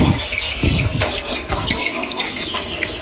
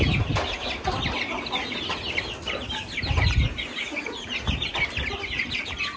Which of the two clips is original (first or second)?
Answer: second